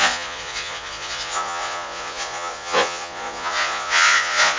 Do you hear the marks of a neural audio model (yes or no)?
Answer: yes